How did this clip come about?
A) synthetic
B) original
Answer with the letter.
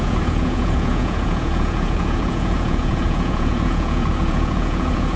A